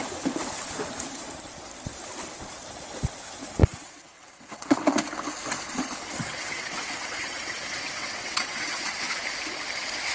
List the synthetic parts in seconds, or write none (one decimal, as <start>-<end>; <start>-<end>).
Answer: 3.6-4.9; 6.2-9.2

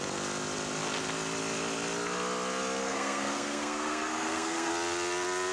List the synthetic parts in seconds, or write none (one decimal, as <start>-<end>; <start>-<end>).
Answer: 2.8-4.7

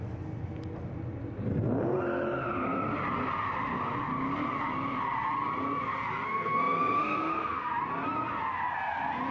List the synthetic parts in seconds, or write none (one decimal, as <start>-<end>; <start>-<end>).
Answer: 6.3-7.7

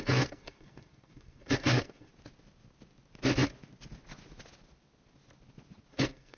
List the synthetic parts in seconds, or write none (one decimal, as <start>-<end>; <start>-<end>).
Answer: 0.0-2.1; 5.9-6.4

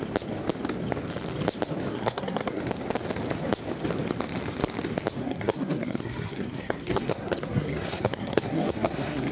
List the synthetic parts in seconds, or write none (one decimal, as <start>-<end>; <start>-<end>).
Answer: 1.9-2.6; 5.2-9.3

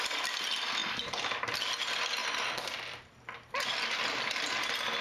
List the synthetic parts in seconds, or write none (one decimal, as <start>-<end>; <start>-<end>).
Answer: none

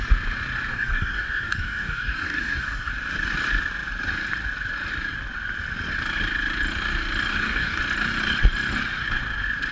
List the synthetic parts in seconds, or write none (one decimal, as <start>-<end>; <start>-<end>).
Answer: 0.7-2.9; 7.3-7.8

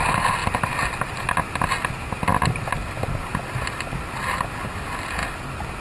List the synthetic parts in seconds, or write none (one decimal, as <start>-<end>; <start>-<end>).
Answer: none